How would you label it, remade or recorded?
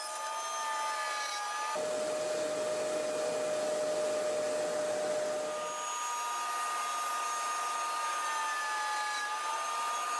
recorded